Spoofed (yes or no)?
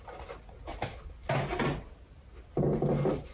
no